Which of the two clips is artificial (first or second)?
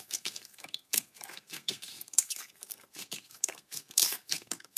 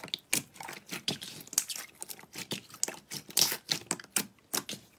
first